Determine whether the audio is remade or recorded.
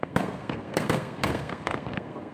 remade